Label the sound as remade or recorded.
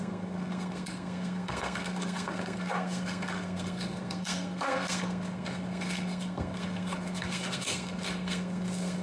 remade